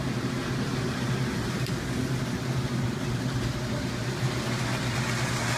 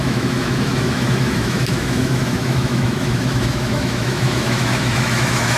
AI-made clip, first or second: second